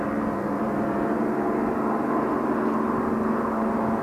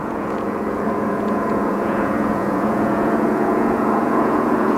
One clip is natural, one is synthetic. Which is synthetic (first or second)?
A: second